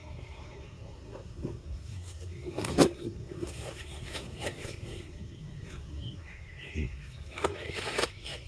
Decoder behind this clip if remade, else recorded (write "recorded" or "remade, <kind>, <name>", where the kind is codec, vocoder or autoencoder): remade, codec, SNAC